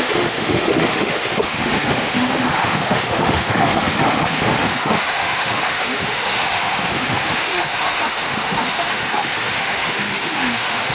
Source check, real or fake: fake